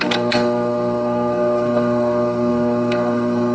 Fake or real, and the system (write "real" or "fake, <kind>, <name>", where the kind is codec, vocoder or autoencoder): fake, codec, SNAC